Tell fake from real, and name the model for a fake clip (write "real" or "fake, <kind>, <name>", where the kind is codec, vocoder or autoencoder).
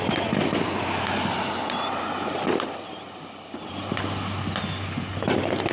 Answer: real